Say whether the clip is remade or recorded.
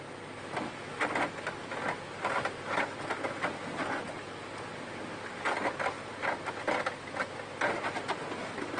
recorded